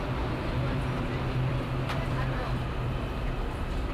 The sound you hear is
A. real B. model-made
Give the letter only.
B